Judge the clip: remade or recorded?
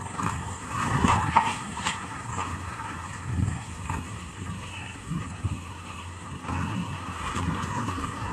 remade